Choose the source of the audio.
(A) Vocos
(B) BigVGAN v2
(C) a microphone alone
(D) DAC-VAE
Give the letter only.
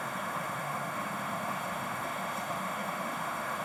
D